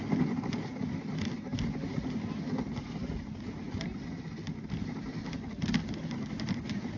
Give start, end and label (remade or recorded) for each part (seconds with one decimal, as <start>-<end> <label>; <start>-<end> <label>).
0.0-7.0 recorded

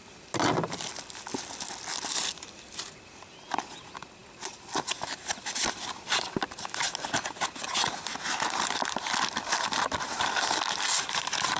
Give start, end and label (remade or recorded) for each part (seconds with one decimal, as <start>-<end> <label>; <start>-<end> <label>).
0.0-11.6 recorded